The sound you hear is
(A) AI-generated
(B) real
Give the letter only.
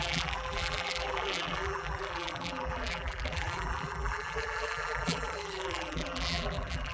A